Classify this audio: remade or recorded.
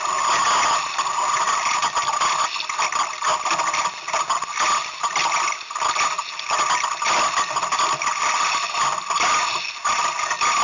recorded